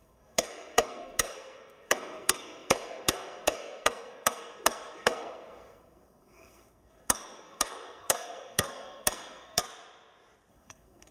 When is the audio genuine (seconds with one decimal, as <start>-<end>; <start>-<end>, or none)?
9.6-10.5